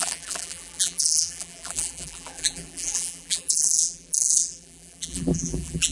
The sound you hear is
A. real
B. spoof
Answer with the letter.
B